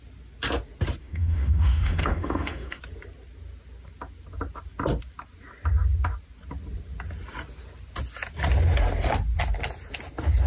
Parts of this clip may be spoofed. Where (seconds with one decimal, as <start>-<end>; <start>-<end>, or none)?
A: 1.0-2.8